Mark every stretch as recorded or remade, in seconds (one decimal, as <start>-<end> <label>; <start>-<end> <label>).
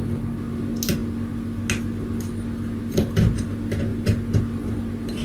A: 0.0-5.2 recorded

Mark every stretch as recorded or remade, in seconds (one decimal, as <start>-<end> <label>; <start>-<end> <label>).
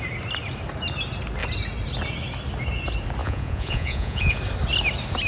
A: 0.0-3.2 recorded; 3.2-4.4 remade; 4.4-5.3 recorded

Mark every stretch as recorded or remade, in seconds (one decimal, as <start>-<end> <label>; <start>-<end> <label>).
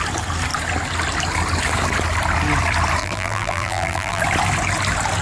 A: 0.0-3.0 recorded; 3.0-4.2 remade; 4.2-5.2 recorded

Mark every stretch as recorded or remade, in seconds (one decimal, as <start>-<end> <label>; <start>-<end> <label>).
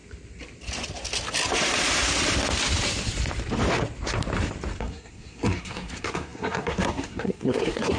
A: 0.0-4.8 recorded; 4.8-8.0 remade